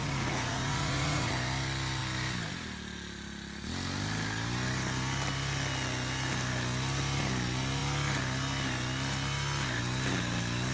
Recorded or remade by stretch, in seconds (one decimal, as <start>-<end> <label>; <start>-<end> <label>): 0.0-1.3 remade; 1.3-10.7 recorded